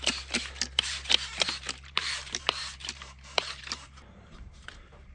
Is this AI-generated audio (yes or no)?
yes